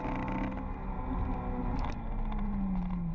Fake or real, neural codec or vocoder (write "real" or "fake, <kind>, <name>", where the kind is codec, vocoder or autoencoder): real